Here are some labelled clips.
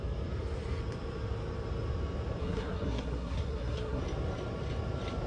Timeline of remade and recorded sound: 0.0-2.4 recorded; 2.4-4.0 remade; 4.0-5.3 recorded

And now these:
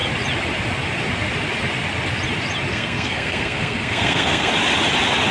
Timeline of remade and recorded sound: 0.0-2.7 recorded; 2.7-4.5 remade; 4.5-5.3 recorded

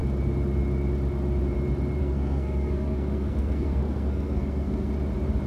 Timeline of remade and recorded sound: 0.0-2.0 recorded; 2.0-4.9 remade; 4.9-5.5 recorded

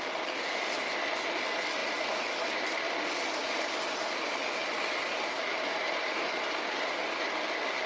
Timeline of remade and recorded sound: 0.0-7.9 recorded

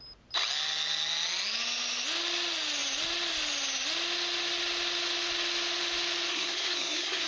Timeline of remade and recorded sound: 0.0-6.3 recorded; 6.3-7.3 remade

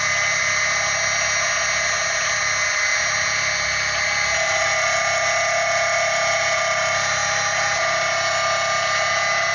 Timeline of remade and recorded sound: 0.0-9.5 recorded